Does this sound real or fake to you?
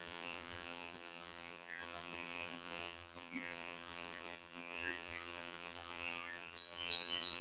fake